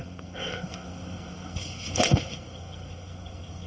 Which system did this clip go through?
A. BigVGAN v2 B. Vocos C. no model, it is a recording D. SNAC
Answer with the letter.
D